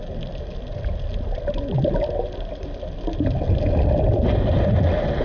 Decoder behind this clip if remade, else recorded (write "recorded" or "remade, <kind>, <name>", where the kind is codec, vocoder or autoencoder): recorded